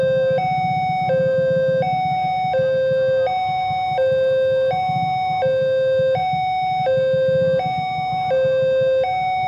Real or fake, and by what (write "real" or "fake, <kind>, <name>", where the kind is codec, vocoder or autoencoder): real